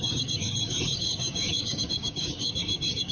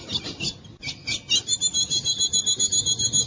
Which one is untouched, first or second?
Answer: second